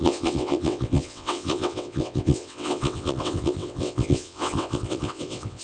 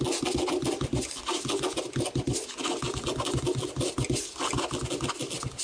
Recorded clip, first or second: second